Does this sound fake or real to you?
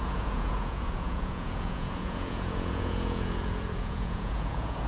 fake